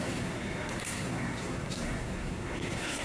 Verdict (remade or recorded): remade